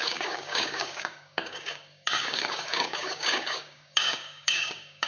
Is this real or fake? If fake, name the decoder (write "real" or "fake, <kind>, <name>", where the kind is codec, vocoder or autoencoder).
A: fake, codec, DAC